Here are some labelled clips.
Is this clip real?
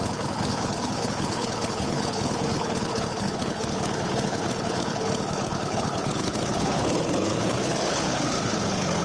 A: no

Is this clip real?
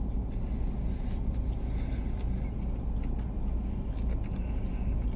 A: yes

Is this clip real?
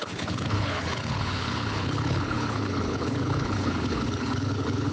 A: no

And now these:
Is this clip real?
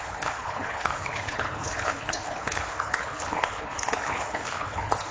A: no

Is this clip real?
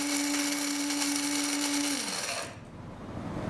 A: yes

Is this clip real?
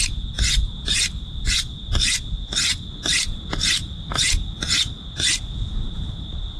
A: yes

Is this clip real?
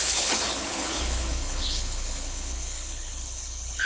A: no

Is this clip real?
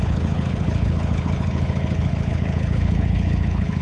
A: no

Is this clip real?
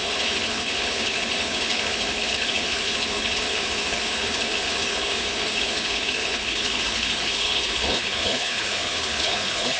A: no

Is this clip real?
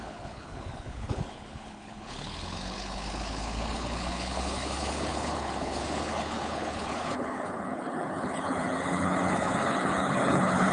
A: no